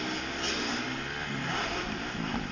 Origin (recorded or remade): recorded